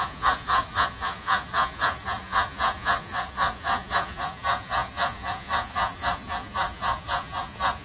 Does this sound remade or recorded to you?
remade